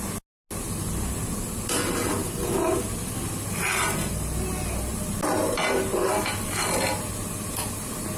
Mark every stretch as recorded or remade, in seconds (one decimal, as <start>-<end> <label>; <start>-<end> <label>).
0.0-8.2 recorded